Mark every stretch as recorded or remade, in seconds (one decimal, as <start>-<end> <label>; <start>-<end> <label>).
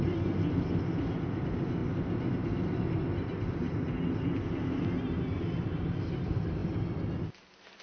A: 0.0-7.8 recorded